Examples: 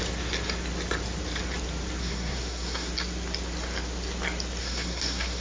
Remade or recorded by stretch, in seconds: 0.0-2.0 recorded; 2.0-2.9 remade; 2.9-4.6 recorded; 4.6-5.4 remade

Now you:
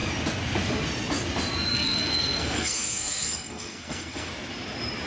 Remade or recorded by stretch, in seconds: 0.0-1.7 recorded; 1.7-4.3 remade; 4.3-5.1 recorded